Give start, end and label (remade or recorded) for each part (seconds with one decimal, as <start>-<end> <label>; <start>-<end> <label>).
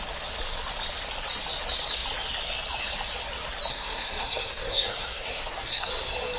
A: 0.0-3.7 recorded; 3.7-5.9 remade; 5.9-6.4 recorded